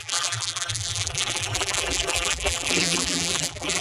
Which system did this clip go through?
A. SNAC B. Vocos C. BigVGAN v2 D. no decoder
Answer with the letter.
C